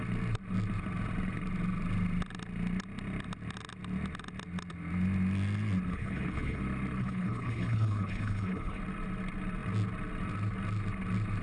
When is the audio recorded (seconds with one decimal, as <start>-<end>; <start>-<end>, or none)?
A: 0.0-5.9; 6.6-7.0; 8.8-11.4

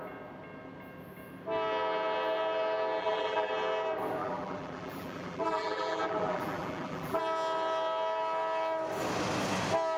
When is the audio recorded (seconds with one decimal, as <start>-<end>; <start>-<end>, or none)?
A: 0.0-3.0; 3.5-4.2; 7.2-10.0

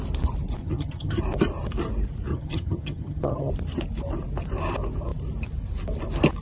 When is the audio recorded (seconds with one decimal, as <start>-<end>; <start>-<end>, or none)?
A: 0.0-0.6; 1.2-2.3; 3.5-6.4

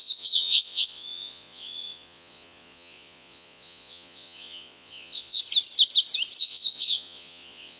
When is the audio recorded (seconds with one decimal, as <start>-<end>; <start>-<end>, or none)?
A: 5.4-6.4

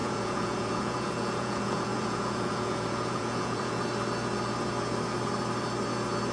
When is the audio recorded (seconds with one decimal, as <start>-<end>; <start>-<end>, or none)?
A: 3.8-6.3

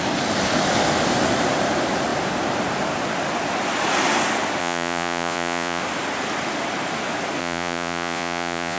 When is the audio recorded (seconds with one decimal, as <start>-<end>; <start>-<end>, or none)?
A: 0.0-4.6; 5.8-7.4

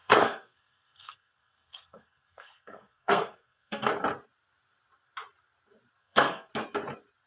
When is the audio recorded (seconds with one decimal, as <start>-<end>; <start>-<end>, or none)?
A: 3.9-6.0; 6.5-7.3